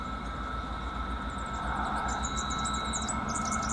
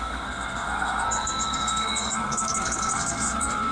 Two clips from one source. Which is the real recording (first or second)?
first